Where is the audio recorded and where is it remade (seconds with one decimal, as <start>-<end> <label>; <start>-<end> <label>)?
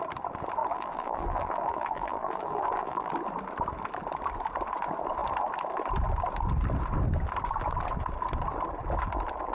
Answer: 0.0-0.6 recorded; 0.6-3.1 remade; 3.1-9.5 recorded